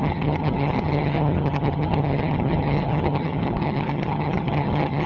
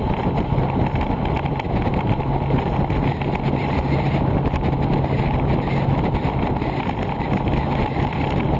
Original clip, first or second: second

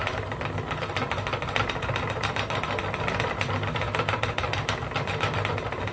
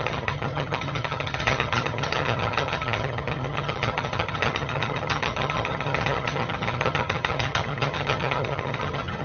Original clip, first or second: first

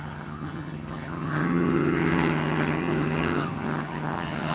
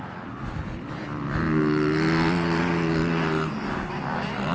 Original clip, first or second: second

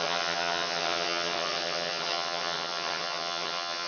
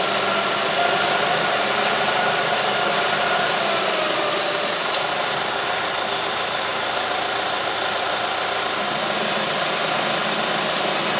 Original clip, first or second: second